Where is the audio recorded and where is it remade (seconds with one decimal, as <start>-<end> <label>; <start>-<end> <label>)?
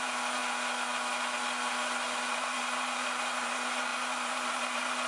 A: 0.0-0.4 remade; 0.4-2.3 recorded; 2.3-5.1 remade